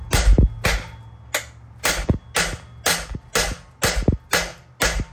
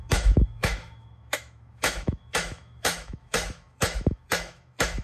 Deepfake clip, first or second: second